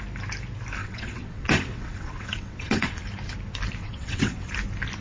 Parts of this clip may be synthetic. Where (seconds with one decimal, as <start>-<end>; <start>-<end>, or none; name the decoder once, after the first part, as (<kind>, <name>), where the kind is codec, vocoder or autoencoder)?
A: 0.8-3.0 (vocoder, WaveNeXt); 3.8-4.5